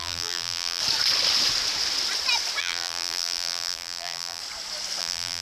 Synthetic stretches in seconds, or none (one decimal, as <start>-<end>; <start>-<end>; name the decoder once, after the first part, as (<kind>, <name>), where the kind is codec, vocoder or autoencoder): 0.0-0.8 (vocoder, BigVGAN v2); 2.6-4.4; 5.0-5.4